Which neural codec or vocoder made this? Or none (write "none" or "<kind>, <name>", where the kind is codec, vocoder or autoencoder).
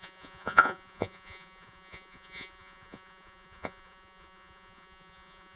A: vocoder, Vocos